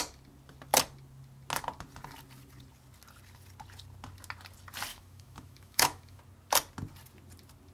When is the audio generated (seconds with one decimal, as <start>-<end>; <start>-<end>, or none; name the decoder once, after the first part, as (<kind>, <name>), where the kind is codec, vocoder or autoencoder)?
4.9-6.2 (autoencoder, DAC-VAE)